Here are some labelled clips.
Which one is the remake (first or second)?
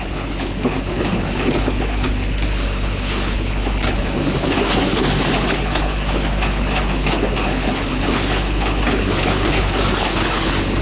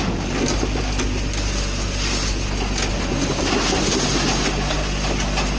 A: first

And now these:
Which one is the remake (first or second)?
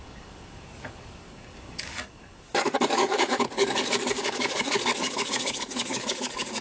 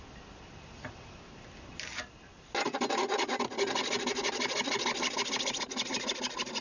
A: first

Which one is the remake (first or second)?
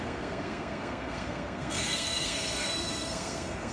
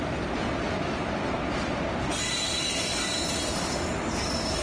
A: first